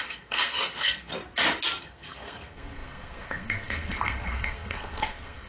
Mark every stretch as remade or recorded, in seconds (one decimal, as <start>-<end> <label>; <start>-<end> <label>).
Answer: 0.0-1.1 remade; 1.1-1.8 recorded; 1.8-5.5 remade